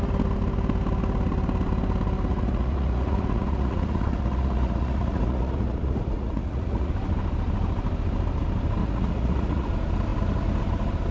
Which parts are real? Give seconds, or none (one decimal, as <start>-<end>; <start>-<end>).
0.0-2.3; 6.9-8.8; 9.7-11.1